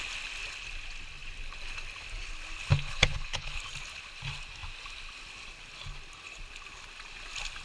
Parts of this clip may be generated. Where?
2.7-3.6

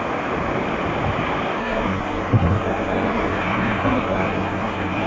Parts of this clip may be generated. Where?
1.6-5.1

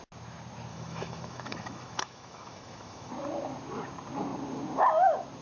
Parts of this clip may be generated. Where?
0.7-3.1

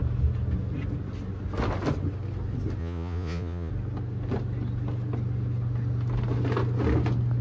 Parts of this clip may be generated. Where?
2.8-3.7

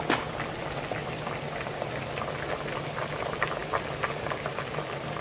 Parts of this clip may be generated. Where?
none